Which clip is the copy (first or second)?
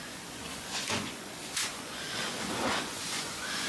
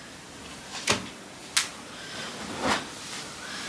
first